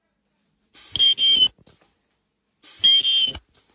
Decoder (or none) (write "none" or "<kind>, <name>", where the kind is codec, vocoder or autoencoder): none